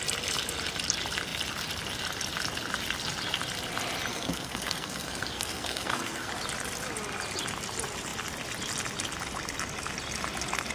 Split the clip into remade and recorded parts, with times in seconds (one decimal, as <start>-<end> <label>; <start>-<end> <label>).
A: 0.0-4.1 recorded; 4.1-6.3 remade; 6.3-10.7 recorded